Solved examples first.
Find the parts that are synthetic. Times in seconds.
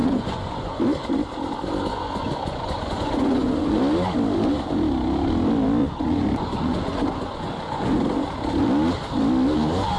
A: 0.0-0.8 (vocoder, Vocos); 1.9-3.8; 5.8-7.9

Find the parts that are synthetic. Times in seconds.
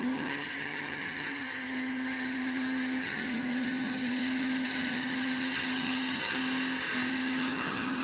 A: 0.0-6.4 (vocoder, HiFi-GAN); 7.1-8.0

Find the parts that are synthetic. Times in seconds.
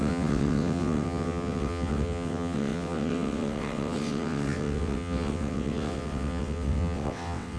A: 0.0-7.6 (vocoder, WaveNeXt)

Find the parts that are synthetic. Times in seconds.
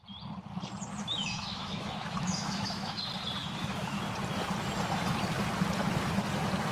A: 1.0-3.0 (autoencoder, DAC-VAE); 3.4-4.0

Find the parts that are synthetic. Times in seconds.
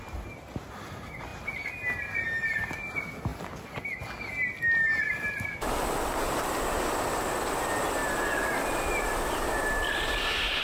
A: none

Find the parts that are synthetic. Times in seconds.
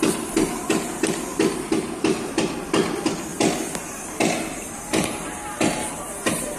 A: none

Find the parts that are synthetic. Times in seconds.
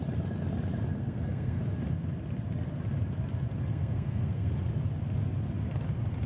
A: 1.0-1.6 (codec, SNAC); 3.7-4.5